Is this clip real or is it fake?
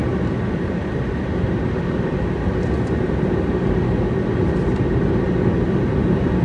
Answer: real